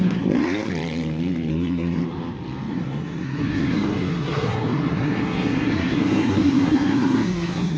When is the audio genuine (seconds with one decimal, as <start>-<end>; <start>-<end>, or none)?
0.7-1.5; 2.0-2.7